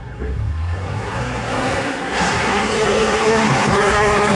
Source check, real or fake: fake